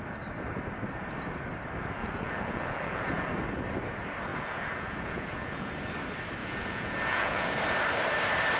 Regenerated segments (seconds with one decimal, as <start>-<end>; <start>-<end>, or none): 2.0-3.3; 4.3-5.7; 6.4-7.5